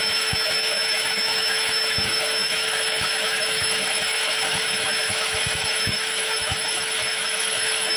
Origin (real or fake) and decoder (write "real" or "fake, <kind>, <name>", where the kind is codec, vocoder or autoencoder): fake, autoencoder, DAC-VAE